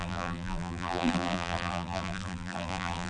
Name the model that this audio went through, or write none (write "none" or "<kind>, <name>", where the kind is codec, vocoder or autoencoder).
vocoder, BigVGAN v2